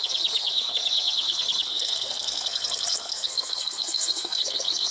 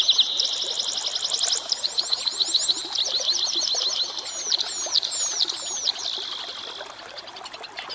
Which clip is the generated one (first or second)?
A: first